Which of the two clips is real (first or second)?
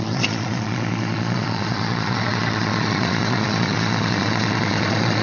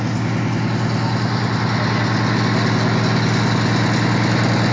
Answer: second